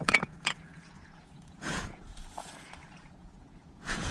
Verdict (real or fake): fake